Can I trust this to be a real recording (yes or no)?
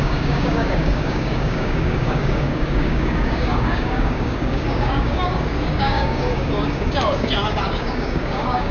no